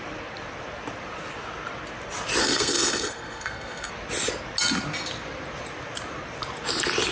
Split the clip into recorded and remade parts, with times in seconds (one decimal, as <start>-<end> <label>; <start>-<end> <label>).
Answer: 0.0-2.4 recorded; 2.4-3.9 remade; 3.9-7.1 recorded